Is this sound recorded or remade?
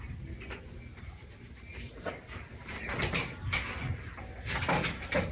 recorded